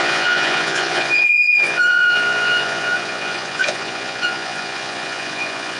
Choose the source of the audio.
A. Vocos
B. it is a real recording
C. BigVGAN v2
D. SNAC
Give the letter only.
A